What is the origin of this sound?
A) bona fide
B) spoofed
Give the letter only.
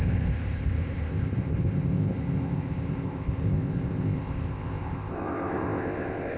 B